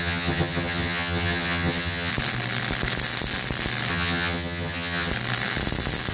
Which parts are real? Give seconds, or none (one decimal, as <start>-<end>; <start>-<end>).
2.1-3.9; 5.1-6.1